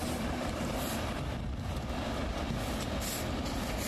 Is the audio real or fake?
real